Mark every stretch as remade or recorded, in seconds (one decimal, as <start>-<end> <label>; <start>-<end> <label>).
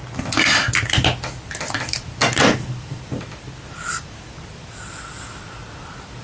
0.0-1.8 recorded; 1.8-6.2 remade